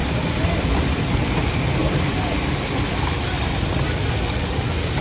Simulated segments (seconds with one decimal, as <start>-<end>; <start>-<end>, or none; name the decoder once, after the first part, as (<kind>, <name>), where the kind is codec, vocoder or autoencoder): 0.0-0.8 (vocoder, BigVGAN v2); 1.8-4.1

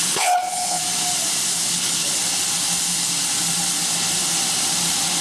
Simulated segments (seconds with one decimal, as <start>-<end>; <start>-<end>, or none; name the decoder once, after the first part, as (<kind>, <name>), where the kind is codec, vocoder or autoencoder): 0.0-0.8 (codec, HILCodec); 1.7-2.1

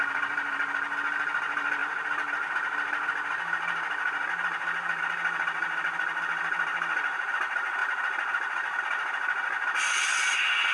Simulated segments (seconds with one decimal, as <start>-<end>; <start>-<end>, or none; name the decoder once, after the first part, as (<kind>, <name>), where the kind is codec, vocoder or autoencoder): none

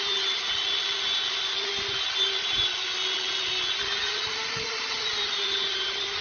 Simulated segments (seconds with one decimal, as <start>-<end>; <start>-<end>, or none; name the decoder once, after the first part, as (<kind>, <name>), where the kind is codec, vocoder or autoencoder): none

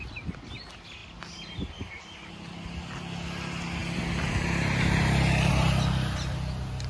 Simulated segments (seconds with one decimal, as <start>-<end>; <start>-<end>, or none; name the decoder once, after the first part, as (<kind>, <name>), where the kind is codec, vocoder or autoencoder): none

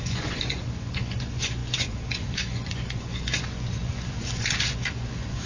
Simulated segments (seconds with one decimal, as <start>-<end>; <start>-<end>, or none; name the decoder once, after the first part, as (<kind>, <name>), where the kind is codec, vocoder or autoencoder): 0.0-5.5 (vocoder, Vocos)

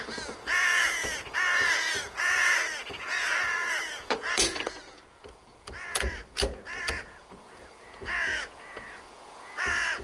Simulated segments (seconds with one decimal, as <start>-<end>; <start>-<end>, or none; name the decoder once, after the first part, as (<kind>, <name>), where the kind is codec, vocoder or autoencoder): 0.0-6.2 (vocoder, Vocos); 6.9-10.0